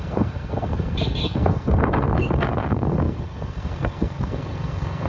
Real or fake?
fake